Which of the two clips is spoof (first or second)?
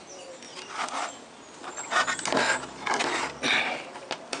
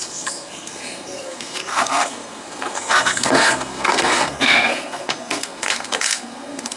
second